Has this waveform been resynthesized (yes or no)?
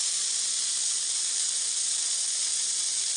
no